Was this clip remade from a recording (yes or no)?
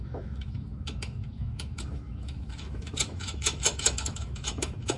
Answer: yes